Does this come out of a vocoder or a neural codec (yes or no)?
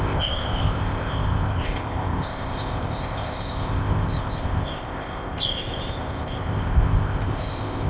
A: yes